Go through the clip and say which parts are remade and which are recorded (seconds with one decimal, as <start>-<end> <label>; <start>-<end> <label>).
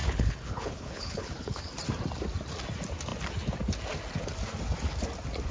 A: 0.0-1.6 remade; 1.6-5.5 recorded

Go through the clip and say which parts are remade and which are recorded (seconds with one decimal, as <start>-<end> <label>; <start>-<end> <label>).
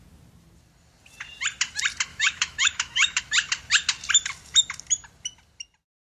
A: 0.0-2.1 recorded; 2.1-3.2 remade; 3.2-6.1 recorded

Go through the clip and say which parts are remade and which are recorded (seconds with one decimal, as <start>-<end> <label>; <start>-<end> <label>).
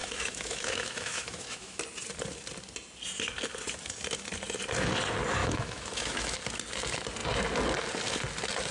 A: 0.0-1.8 remade; 1.8-5.4 recorded; 5.4-6.4 remade; 6.4-8.7 recorded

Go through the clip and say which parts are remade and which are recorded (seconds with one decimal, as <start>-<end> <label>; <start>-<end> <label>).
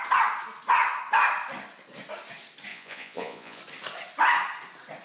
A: 0.0-2.7 recorded; 2.7-3.6 remade; 3.6-5.0 recorded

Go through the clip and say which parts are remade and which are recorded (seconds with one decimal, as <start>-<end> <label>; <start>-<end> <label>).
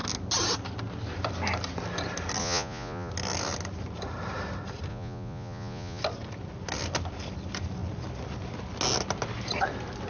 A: 0.0-2.4 recorded; 2.4-3.1 remade; 3.1-4.9 recorded; 4.9-6.0 remade; 6.0-10.1 recorded